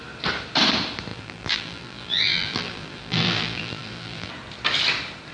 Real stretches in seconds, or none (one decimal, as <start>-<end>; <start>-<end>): 0.0-1.1; 4.3-5.3